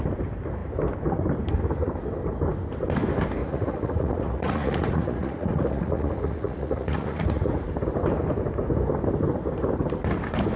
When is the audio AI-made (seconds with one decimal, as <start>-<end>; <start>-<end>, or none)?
3.4-7.5